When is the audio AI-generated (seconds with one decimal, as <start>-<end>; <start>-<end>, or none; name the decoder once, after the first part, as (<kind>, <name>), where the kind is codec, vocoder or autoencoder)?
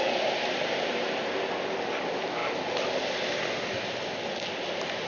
none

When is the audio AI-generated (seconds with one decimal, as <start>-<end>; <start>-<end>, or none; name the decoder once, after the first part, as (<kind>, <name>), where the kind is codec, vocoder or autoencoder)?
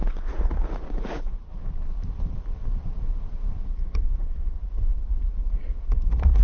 0.0-1.5 (vocoder, Vocos); 3.7-6.4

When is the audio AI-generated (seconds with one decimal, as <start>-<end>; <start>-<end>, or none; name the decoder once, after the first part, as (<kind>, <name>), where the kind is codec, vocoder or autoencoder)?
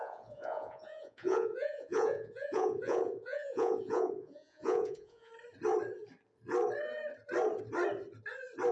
0.0-5.3 (vocoder, Vocos)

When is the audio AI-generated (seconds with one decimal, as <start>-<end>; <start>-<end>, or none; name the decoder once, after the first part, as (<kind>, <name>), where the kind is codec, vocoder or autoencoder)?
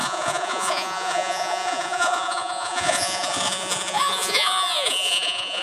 0.0-5.6 (vocoder, Vocos)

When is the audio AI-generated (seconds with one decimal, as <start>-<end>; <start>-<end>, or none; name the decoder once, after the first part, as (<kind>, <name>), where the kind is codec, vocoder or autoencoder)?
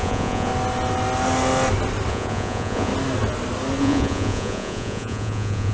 0.0-0.5 (vocoder, Vocos); 2.1-2.9; 3.8-5.7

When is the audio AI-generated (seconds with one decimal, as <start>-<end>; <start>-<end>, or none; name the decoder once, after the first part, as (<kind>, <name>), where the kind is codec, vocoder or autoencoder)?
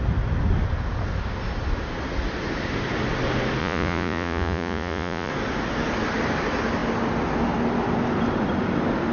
3.6-5.3 (vocoder, Vocos)